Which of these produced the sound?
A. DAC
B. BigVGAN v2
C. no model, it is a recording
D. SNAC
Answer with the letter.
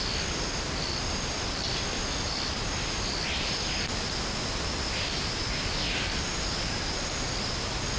C